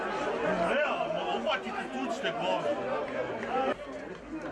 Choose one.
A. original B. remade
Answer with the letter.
A